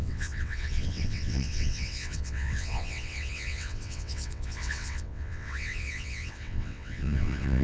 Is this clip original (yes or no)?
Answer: no